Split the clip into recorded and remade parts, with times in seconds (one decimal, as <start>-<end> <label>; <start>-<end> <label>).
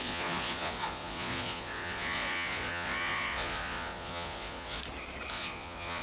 0.0-4.8 remade; 4.8-5.3 recorded; 5.3-6.0 remade